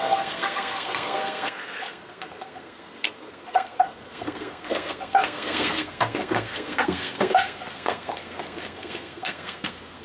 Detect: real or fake fake